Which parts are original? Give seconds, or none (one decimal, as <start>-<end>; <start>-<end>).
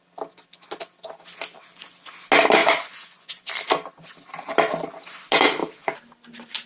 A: 0.0-2.6; 3.5-6.7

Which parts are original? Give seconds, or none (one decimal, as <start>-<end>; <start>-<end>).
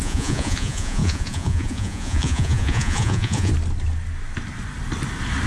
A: 3.5-5.5